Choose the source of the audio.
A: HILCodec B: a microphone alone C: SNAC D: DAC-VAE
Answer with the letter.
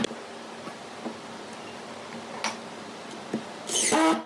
B